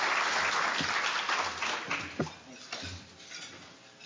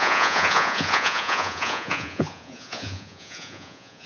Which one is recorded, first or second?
first